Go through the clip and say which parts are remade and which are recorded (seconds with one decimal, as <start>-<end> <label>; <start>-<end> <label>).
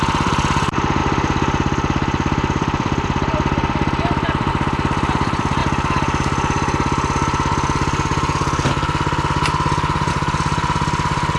0.0-5.6 remade; 5.6-10.1 recorded; 10.1-11.4 remade